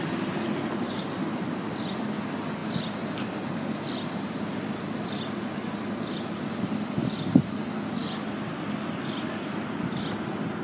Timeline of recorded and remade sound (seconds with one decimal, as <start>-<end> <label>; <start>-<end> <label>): 0.0-10.6 recorded